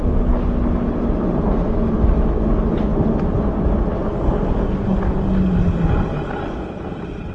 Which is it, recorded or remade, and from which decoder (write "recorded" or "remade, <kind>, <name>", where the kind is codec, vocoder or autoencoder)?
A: recorded